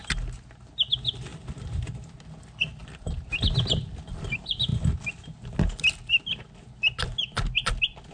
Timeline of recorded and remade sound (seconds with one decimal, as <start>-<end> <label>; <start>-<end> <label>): 0.0-8.1 recorded